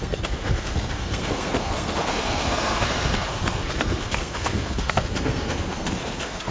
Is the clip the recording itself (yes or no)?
no